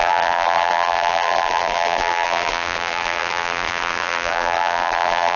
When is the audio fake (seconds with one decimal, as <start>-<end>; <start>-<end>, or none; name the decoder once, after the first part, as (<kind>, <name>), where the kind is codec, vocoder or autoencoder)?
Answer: 0.0-5.4 (vocoder, BigVGAN v2)